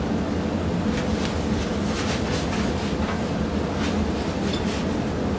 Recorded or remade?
recorded